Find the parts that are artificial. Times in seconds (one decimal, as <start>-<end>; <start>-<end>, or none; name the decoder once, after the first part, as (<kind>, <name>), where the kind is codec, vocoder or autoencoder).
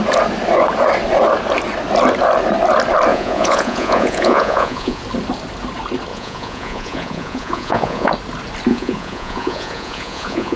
3.1-5.0 (vocoder, Vocos); 6.1-8.1; 8.7-10.6